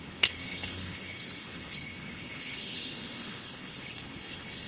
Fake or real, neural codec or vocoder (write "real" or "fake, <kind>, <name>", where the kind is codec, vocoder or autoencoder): fake, codec, HILCodec